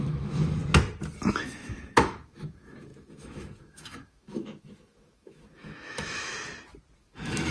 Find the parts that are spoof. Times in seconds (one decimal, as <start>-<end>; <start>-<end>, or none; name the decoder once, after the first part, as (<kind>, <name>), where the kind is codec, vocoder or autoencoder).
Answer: 0.0-0.6 (autoencoder, DAC-VAE); 1.3-6.3; 7.0-7.5